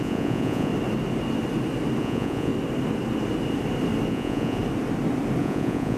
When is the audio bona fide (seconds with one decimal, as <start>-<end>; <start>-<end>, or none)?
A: 0.7-2.0; 2.5-4.1; 4.6-5.4